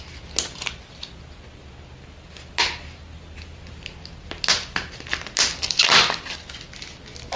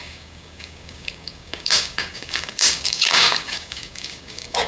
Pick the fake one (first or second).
second